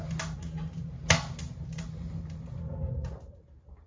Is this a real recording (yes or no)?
yes